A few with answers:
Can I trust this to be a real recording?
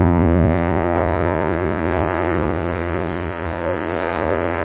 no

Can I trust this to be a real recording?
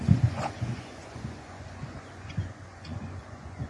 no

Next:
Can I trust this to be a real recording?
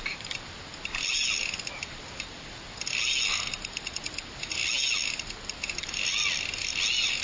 yes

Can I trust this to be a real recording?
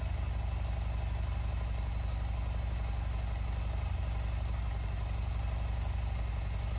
yes